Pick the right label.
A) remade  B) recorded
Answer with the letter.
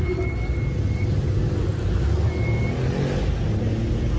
B